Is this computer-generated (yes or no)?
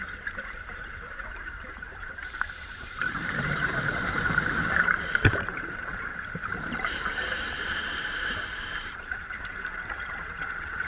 yes